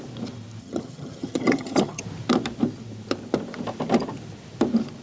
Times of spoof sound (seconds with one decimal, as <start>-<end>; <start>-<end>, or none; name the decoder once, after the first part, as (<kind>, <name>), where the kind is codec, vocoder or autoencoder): 0.6-2.0 (vocoder, HiFi-GAN)